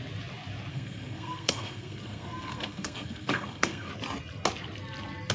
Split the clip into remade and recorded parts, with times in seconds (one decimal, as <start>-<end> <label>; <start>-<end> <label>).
0.0-0.7 recorded; 0.7-3.9 remade; 3.9-5.3 recorded